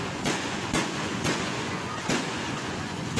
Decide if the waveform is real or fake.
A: fake